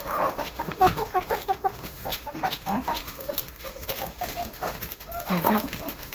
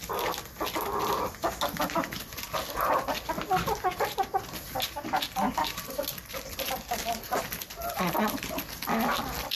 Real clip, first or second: second